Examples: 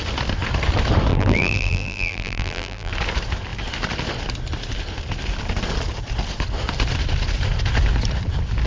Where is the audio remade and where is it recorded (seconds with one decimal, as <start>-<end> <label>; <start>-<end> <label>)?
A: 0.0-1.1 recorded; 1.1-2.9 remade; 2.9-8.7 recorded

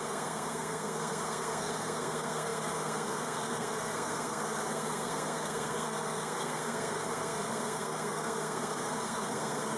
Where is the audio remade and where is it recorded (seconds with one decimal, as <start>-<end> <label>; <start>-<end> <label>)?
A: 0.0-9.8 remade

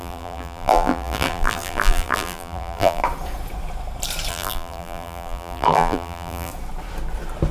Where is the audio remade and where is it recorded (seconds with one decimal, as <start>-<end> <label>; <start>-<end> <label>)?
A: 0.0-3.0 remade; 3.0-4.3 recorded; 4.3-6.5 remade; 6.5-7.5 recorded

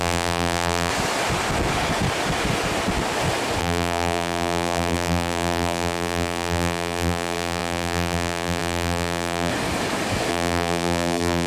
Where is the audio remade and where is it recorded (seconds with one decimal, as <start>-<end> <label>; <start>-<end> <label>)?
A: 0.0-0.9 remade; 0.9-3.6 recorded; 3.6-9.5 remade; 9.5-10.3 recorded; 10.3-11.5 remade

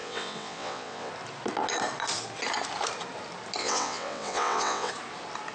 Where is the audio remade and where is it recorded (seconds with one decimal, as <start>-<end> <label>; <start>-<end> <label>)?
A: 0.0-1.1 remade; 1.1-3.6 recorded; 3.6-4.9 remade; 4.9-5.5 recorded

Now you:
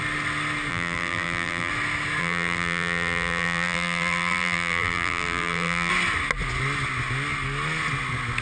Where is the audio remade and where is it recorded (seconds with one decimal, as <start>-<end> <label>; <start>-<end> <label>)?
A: 0.0-0.7 recorded; 0.7-1.7 remade; 1.7-2.2 recorded; 2.2-5.9 remade; 5.9-8.4 recorded

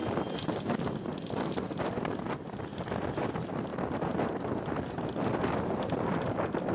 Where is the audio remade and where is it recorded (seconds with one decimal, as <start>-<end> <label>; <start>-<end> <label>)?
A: 0.0-6.7 recorded